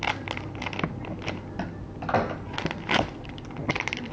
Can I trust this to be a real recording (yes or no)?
yes